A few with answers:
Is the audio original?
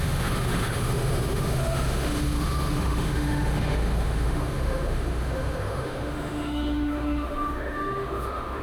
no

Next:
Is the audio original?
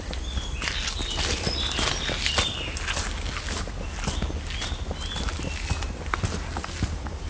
yes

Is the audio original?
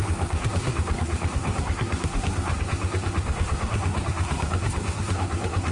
no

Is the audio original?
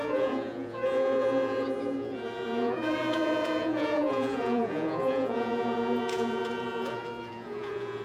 no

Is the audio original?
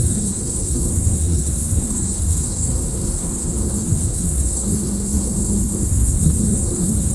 no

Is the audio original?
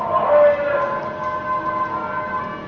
yes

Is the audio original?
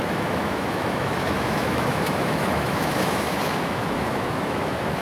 no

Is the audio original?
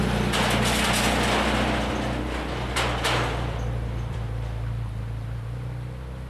yes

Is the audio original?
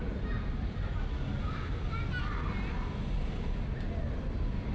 yes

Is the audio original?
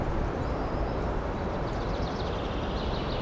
yes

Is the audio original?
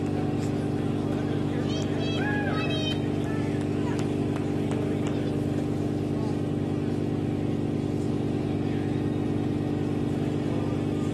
yes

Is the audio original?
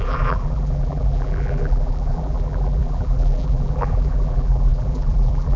no